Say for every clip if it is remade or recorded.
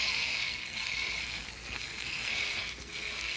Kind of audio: remade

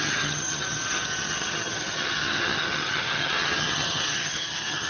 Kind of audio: remade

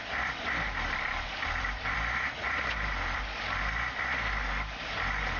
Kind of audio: remade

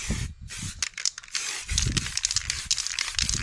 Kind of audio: recorded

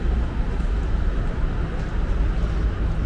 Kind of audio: recorded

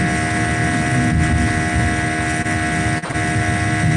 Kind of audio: recorded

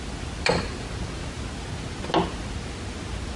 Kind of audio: recorded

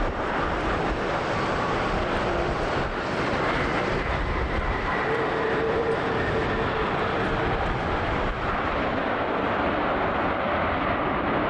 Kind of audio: remade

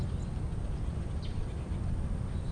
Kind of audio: recorded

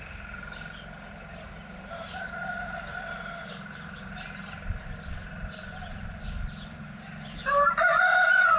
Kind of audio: remade